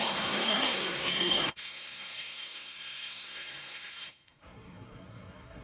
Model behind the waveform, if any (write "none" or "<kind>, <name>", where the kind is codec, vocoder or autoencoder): codec, SNAC